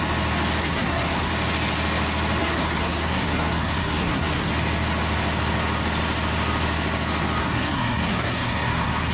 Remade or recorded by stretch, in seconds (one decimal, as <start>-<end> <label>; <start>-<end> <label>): 0.0-0.6 recorded; 0.6-1.3 remade; 1.3-2.4 recorded; 2.4-4.5 remade; 4.5-7.4 recorded; 7.4-9.1 remade